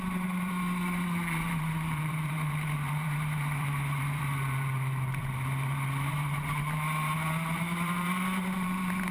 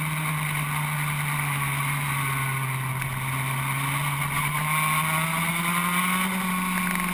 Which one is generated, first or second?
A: first